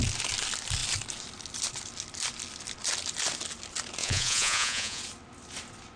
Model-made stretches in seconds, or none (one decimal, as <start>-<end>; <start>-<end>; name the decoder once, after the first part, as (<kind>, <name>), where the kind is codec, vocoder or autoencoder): 4.0-5.0 (vocoder, Vocos)